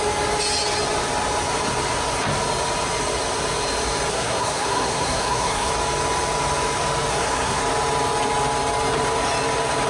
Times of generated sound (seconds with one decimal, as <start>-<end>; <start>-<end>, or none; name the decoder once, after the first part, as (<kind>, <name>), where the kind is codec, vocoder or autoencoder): 4.1-5.7 (codec, SNAC); 7.1-7.6